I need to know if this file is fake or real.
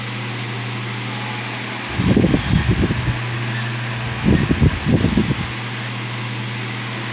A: real